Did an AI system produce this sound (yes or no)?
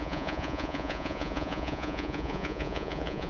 yes